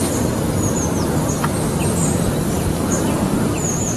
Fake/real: real